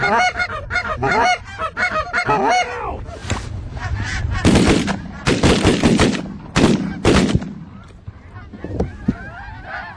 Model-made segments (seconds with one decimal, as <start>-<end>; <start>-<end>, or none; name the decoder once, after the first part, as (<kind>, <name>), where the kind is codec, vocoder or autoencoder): none